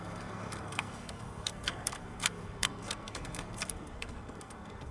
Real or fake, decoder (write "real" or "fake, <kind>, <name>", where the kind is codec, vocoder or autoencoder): fake, codec, SNAC